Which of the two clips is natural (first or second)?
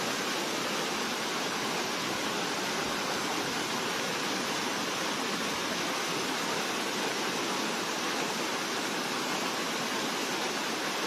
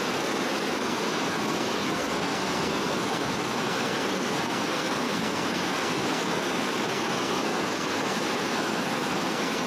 first